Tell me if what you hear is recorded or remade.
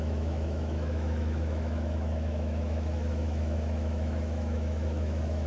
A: remade